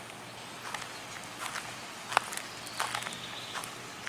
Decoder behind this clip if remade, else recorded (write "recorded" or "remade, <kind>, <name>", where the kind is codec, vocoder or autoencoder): recorded